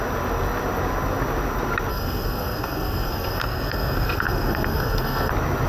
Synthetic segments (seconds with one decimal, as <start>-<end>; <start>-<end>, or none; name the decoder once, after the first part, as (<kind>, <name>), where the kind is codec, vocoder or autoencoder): 1.9-5.3 (codec, SNAC)